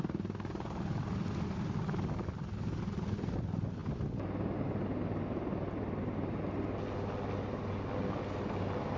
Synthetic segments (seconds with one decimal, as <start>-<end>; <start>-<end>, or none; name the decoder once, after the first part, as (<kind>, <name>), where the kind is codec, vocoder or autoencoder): none